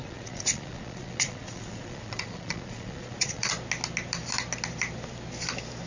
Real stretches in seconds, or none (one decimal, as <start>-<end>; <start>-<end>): 3.5-5.9

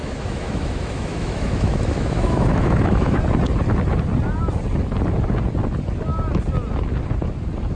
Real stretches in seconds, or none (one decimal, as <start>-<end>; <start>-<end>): 3.2-7.8

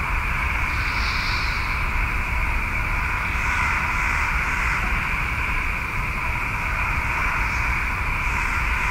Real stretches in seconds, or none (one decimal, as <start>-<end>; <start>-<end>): 0.0-8.9

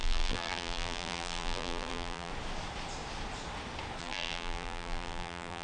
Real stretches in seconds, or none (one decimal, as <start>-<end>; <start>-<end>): 2.3-4.0